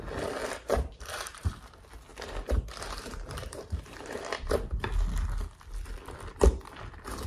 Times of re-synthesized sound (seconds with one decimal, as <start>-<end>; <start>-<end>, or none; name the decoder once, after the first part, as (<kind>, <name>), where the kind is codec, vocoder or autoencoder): 0.4-1.5 (vocoder, BigVGAN v2); 2.1-4.5